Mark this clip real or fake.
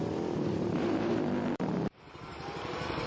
fake